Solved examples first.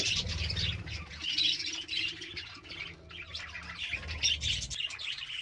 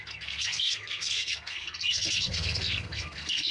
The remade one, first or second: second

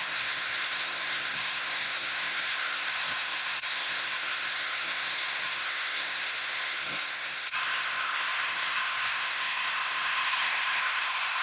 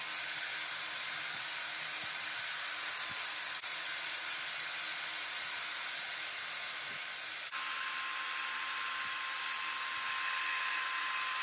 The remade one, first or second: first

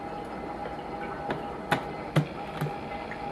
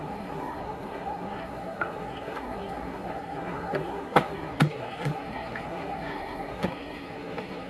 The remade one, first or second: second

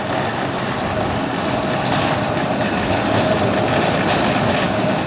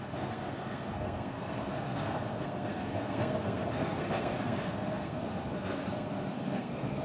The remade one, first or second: second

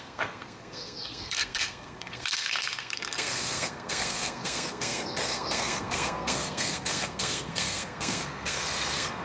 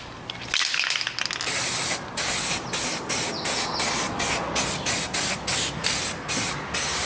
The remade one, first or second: first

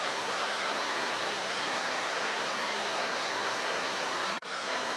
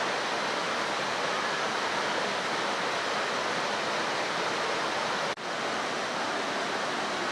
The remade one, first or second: first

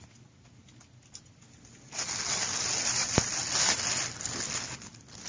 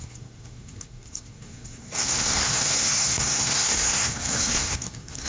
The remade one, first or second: second